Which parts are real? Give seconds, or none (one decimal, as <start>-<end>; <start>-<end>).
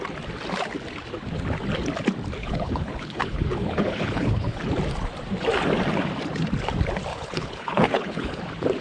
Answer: 0.0-2.4; 4.6-7.1; 8.4-8.8